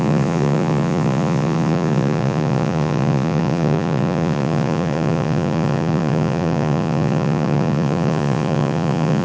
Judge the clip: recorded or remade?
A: remade